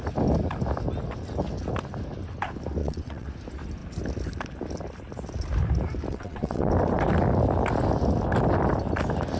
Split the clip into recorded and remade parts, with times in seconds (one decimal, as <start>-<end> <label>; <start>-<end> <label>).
0.0-2.8 recorded; 2.8-3.3 remade; 3.3-6.1 recorded; 6.1-6.7 remade; 6.7-9.4 recorded